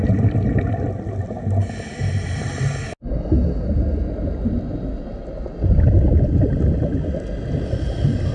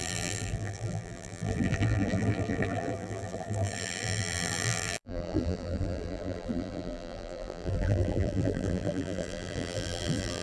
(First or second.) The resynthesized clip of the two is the second